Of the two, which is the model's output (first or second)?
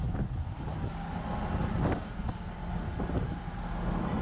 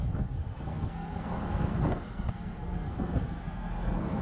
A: second